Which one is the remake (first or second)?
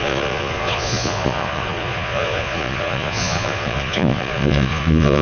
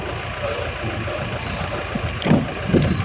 first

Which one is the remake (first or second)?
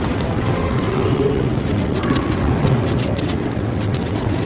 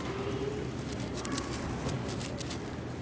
first